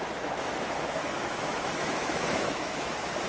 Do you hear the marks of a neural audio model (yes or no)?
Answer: yes